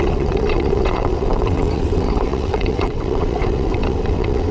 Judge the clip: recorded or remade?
remade